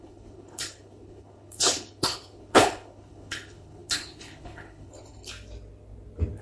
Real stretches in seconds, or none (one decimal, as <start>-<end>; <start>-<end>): 5.3-6.4